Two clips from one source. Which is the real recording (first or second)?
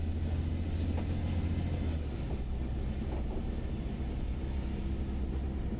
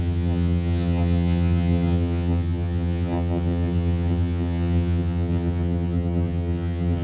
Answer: first